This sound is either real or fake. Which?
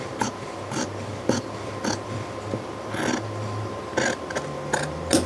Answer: real